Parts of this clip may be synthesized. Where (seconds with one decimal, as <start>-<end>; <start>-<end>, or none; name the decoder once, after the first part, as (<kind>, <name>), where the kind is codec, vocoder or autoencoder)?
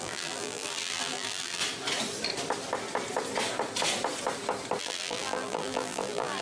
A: 0.0-1.6 (vocoder, BigVGAN v2); 4.8-6.4